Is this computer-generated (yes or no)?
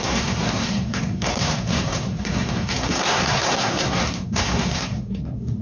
yes